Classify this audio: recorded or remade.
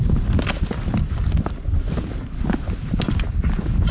recorded